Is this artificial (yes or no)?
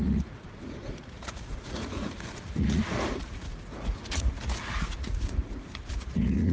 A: yes